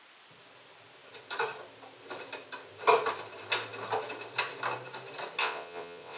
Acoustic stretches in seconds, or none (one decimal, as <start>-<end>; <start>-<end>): 0.0-5.4

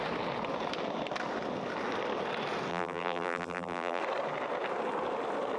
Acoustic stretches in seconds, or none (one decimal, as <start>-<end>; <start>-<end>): 0.0-2.7; 4.0-5.6

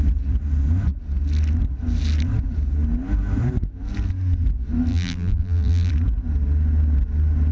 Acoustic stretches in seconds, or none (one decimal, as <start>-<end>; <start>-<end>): 0.0-4.9; 5.9-7.5

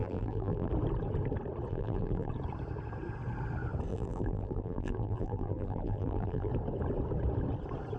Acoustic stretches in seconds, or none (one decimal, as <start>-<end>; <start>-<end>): 0.7-1.7; 2.3-3.9; 6.5-8.0

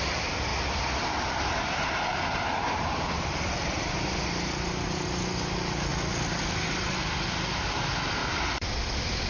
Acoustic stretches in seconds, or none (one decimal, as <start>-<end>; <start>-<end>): 0.0-0.5; 3.9-5.9; 6.4-8.2

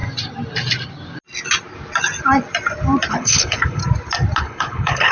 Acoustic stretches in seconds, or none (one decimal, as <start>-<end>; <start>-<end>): 0.0-3.1; 3.8-4.4

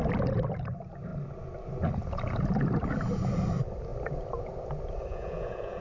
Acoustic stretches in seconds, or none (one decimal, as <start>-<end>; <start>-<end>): 0.0-5.1

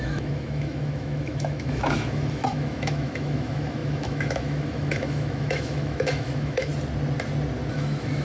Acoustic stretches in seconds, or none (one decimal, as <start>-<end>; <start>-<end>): 6.7-7.7